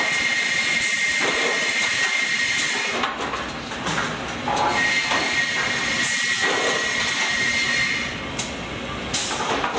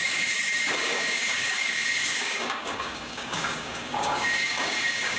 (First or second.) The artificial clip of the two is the second